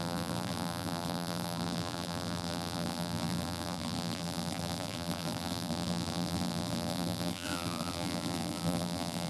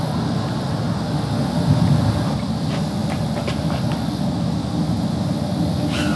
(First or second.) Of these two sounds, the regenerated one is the first